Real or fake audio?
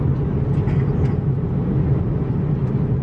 real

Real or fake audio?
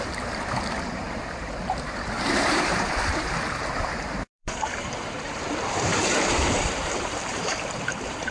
fake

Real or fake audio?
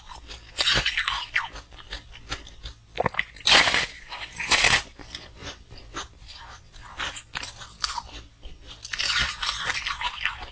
real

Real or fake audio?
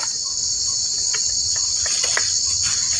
fake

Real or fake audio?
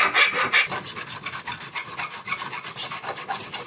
real